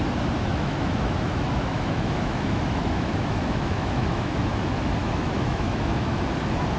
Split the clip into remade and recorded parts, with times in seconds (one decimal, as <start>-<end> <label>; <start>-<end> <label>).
0.0-0.5 recorded; 0.5-4.6 remade; 4.6-5.0 recorded; 5.0-6.2 remade; 6.2-6.8 recorded